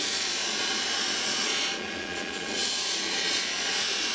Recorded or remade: remade